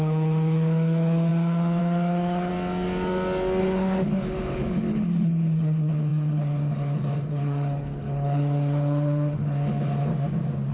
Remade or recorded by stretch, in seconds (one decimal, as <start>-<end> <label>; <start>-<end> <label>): 0.0-2.5 remade; 2.5-3.6 recorded; 3.6-10.1 remade; 10.1-10.7 recorded